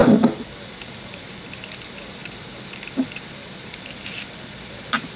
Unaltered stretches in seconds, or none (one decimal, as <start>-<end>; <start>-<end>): none

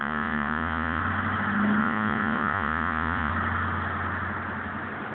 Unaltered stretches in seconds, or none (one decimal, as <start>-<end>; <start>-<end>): 1.0-1.8; 3.3-5.1

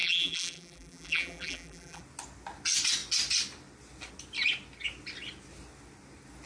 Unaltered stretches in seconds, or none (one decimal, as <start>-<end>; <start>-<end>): 2.0-6.5

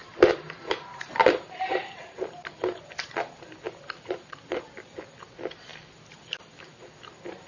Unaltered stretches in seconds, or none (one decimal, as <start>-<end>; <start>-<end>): 2.8-7.5

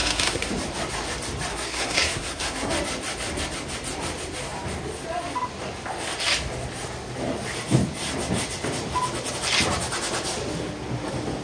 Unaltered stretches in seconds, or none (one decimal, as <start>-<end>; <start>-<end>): 0.5-1.5; 2.7-11.4